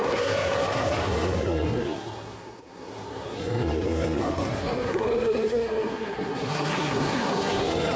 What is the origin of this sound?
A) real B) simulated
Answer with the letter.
B